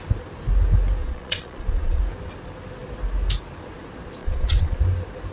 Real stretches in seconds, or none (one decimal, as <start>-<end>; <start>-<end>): 0.0-1.0; 2.0-4.2; 4.8-5.3